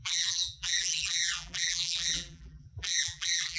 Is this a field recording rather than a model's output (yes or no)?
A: no